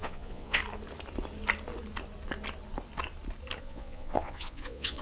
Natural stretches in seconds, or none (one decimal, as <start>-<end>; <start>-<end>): 0.6-3.6